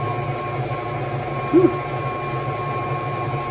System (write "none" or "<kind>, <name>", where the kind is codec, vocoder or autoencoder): none